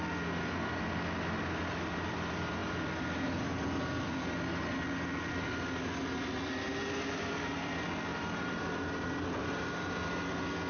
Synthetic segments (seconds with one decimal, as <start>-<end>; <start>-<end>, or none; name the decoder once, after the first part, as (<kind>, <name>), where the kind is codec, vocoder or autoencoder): 8.1-8.6 (vocoder, BigVGAN v2); 9.4-10.0